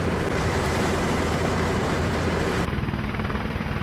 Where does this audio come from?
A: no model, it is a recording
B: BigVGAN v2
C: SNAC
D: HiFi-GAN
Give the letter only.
B